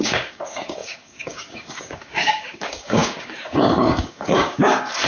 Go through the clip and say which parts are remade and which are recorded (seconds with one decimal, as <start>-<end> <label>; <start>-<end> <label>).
0.0-5.1 remade